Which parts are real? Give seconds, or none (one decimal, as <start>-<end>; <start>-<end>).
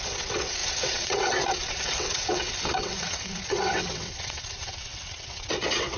none